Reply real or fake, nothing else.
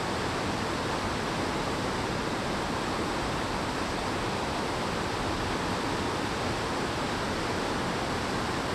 real